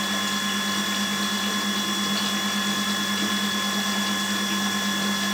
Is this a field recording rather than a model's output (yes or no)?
yes